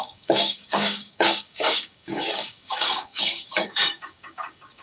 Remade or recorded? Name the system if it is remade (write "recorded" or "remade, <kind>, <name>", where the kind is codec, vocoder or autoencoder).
remade, codec, DAC